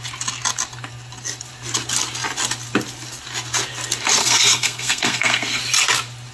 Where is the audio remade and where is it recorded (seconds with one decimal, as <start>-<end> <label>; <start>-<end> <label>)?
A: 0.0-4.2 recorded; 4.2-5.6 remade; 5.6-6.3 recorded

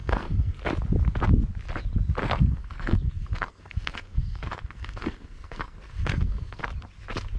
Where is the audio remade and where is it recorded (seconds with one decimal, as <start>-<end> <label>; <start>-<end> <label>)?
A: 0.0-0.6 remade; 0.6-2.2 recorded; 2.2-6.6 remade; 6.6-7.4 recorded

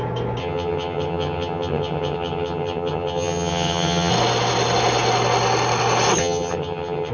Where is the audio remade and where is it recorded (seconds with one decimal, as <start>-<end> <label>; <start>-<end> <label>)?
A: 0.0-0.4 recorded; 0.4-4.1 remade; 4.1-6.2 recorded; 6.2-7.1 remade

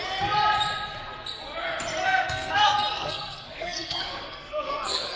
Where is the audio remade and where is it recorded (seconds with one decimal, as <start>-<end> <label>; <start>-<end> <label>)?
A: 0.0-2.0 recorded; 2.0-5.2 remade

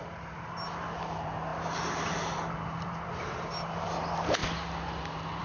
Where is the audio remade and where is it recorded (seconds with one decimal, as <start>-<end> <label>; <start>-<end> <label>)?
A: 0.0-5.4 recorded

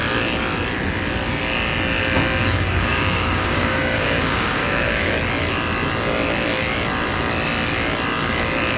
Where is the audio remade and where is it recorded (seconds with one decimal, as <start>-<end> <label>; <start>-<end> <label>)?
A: 0.0-2.4 recorded; 2.4-5.1 remade; 5.1-8.8 recorded